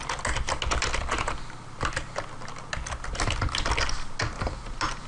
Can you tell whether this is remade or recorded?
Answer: recorded